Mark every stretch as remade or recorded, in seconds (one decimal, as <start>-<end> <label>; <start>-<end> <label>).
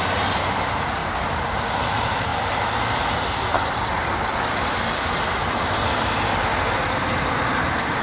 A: 0.0-1.0 recorded; 1.0-1.7 remade; 1.7-8.0 recorded